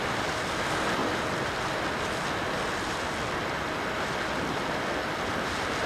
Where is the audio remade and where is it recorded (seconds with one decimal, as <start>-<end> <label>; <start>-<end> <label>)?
0.0-1.0 remade; 1.0-4.5 recorded; 4.5-5.9 remade

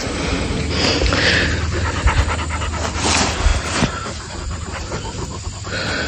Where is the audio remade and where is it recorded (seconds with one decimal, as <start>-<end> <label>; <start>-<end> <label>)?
0.0-3.5 recorded; 3.5-4.9 remade; 4.9-6.1 recorded

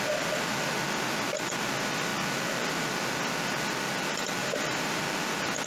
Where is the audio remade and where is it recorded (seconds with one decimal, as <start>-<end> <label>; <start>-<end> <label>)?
0.0-4.4 recorded; 4.4-5.0 remade; 5.0-5.7 recorded

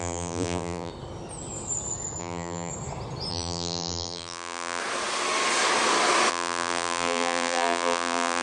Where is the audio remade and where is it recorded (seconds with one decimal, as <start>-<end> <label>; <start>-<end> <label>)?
0.0-0.9 remade; 0.9-2.2 recorded; 2.2-2.7 remade; 2.7-3.3 recorded; 3.3-4.8 remade; 4.8-6.3 recorded; 6.3-8.4 remade

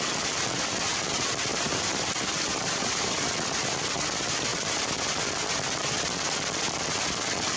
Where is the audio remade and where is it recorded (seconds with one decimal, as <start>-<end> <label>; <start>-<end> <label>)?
0.0-1.5 recorded; 1.5-3.3 remade; 3.3-4.5 recorded; 4.5-5.2 remade; 5.2-7.6 recorded

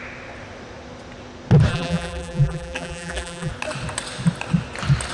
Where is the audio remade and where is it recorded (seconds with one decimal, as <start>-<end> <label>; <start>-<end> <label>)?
0.0-1.7 recorded; 1.7-3.5 remade; 3.5-5.1 recorded

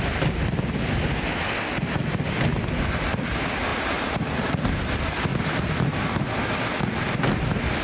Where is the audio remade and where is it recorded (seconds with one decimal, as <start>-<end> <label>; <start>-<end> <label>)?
0.0-3.7 recorded; 3.7-4.7 remade; 4.7-7.8 recorded

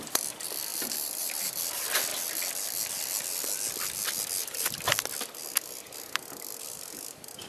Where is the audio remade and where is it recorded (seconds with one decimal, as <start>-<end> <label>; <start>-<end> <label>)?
0.0-2.1 remade; 2.1-6.6 recorded; 6.6-7.5 remade